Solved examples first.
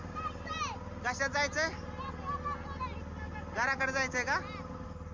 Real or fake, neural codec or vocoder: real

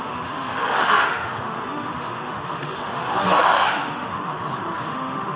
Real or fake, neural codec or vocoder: fake, autoencoder, DAC-VAE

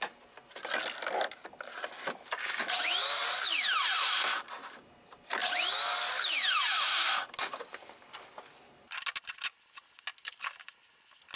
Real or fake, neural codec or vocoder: real